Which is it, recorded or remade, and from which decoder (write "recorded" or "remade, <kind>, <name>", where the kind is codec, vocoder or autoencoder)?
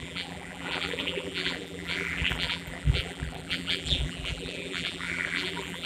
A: remade, vocoder, BigVGAN v2